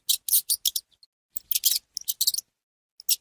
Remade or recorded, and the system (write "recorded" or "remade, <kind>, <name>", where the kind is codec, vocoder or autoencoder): recorded